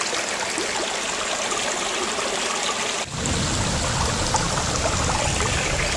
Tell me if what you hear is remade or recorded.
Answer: recorded